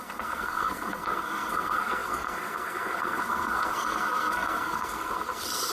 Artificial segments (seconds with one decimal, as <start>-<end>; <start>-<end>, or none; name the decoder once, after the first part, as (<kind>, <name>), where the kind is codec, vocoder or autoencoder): 0.0-5.7 (codec, SNAC)